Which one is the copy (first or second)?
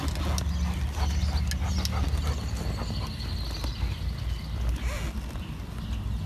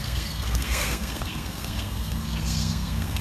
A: second